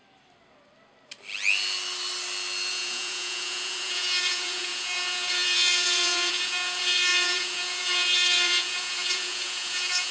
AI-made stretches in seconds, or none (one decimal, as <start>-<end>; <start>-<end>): 2.7-10.1